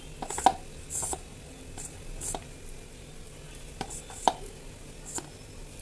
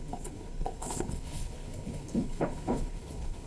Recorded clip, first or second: first